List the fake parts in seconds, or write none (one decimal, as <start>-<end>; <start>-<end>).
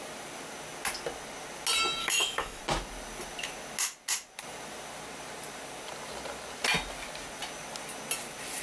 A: 2.0-2.6